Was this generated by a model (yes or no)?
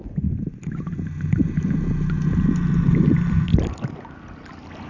no